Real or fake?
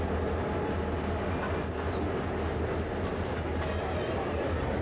real